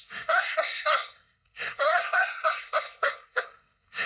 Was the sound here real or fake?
fake